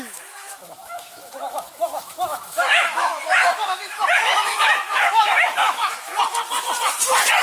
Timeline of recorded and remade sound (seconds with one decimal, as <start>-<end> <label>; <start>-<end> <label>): 0.0-6.1 remade; 6.1-7.4 recorded